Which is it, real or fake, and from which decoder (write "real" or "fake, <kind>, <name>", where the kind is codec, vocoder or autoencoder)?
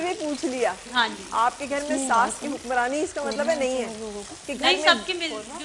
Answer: real